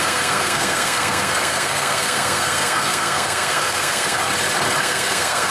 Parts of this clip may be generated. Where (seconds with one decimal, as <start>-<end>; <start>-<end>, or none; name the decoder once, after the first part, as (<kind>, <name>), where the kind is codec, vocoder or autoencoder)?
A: 0.0-4.3 (codec, SNAC); 4.8-5.5